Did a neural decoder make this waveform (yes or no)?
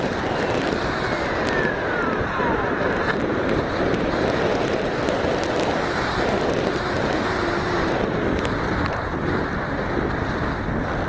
no